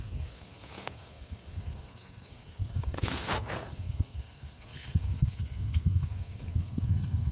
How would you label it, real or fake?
fake